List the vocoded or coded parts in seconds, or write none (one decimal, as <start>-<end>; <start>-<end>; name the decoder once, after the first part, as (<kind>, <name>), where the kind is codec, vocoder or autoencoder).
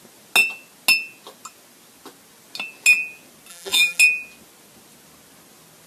3.5-4.0 (vocoder, BigVGAN v2)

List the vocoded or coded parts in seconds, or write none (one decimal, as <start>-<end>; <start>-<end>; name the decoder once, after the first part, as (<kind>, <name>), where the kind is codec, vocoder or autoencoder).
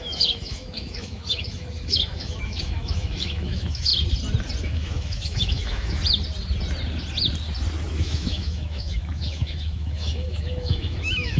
0.0-3.9 (autoencoder, DAC-VAE); 4.6-6.0; 7.9-11.4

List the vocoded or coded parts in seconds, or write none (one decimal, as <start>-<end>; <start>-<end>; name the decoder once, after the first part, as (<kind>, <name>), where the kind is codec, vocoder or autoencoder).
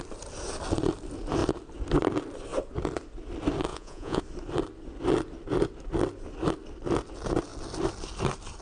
3.7-4.2 (vocoder, Vocos)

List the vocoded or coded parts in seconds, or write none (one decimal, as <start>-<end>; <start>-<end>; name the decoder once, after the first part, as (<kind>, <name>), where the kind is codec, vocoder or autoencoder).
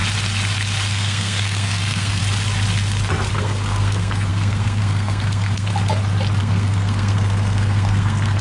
0.9-2.2 (codec, SNAC); 3.3-5.7; 6.4-8.4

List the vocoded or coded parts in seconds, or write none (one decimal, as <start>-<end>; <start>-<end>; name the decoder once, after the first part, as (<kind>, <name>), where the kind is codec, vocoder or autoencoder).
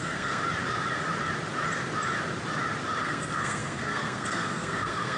0.0-0.4 (codec, SNAC); 3.0-5.2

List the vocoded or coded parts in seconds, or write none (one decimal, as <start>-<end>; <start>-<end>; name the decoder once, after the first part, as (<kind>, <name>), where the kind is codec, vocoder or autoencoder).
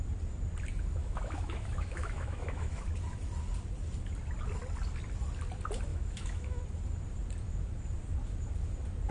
1.0-2.9 (autoencoder, DAC-VAE); 5.9-6.6